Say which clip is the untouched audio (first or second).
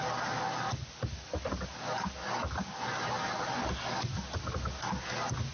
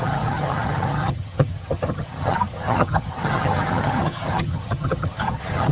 first